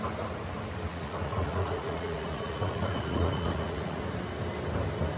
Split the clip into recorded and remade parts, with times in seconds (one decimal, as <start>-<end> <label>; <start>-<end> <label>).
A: 0.0-0.9 recorded; 0.9-4.0 remade; 4.0-5.2 recorded